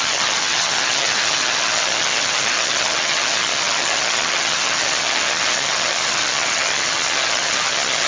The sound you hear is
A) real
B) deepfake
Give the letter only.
B